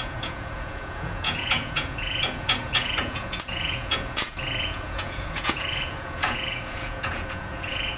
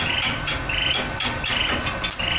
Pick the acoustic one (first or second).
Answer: second